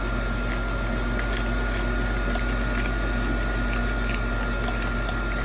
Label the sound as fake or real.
real